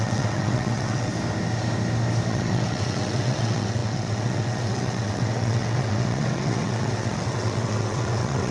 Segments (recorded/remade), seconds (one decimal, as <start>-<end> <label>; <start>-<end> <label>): 0.0-1.1 remade; 1.1-2.3 recorded; 2.3-8.5 remade